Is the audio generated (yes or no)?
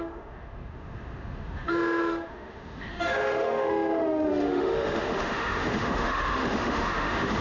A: yes